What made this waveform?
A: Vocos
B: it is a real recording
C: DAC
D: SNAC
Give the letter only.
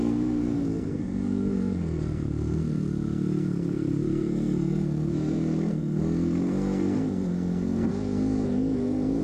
D